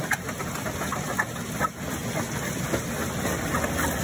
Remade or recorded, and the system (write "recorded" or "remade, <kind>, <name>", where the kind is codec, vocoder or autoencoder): recorded